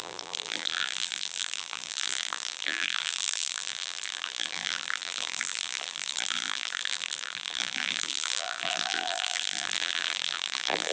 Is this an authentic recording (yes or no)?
no